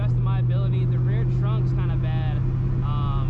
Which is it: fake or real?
real